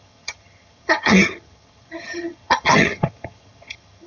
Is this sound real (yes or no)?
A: no